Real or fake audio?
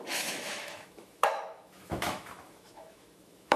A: fake